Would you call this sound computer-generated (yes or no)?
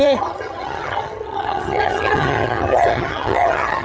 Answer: yes